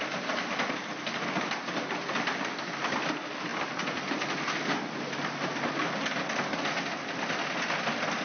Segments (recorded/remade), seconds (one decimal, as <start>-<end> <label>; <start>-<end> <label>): 0.0-8.2 recorded

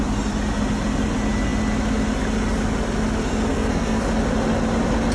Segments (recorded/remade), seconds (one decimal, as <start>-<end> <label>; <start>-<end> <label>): 0.0-3.5 recorded; 3.5-4.0 remade; 4.0-5.1 recorded

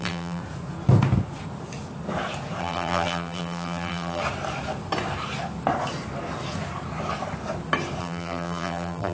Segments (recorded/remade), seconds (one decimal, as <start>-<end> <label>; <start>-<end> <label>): 0.0-0.4 remade; 0.4-2.6 recorded; 2.6-4.2 remade; 4.2-8.0 recorded; 8.0-9.1 remade

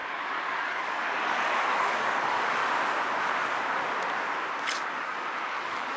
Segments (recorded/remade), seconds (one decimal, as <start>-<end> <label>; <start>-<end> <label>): 0.0-2.6 remade; 2.6-4.9 recorded; 4.9-6.0 remade

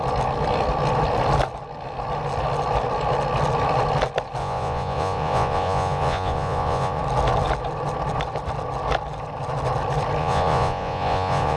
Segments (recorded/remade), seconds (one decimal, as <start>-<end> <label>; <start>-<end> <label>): 0.0-4.4 recorded; 4.4-7.0 remade; 7.0-10.2 recorded; 10.2-11.6 remade

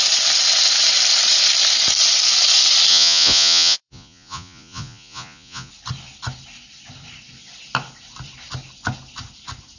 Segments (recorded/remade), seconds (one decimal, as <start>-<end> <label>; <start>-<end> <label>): 0.0-2.9 recorded; 2.9-5.7 remade; 5.7-9.8 recorded

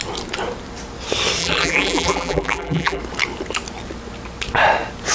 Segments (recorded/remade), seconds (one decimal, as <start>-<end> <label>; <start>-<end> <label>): 0.0-1.4 recorded; 1.4-3.0 remade; 3.0-5.1 recorded